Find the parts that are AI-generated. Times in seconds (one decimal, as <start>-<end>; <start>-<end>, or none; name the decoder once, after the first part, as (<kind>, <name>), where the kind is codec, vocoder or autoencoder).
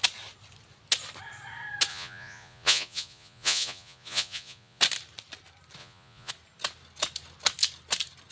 1.9-4.8 (vocoder, Vocos); 5.8-6.3